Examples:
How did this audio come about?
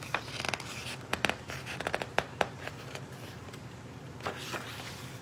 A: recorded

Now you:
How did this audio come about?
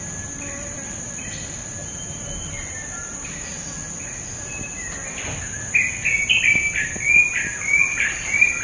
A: recorded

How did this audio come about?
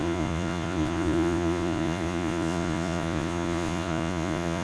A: remade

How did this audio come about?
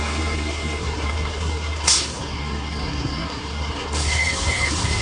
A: remade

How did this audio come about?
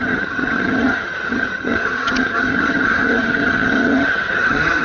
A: remade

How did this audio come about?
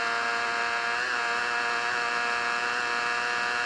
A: recorded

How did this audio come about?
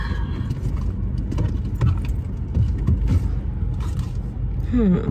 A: recorded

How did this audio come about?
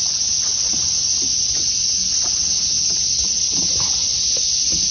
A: recorded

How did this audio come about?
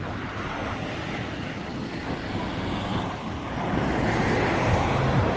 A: recorded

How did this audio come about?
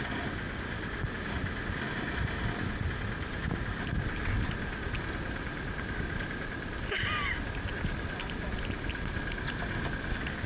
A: recorded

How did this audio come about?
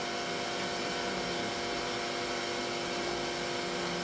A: recorded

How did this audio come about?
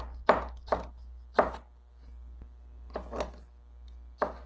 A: recorded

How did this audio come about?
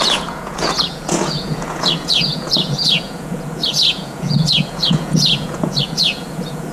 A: remade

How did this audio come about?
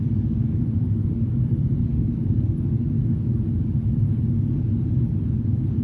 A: remade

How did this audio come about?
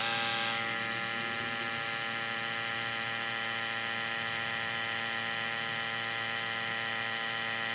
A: recorded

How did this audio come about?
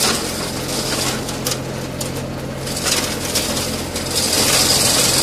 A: recorded